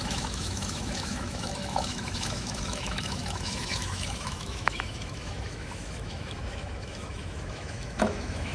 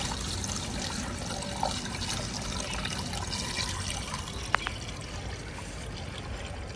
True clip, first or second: second